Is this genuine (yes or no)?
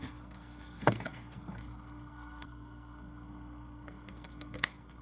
no